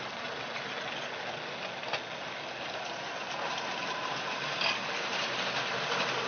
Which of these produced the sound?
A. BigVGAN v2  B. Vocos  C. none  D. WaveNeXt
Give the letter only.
C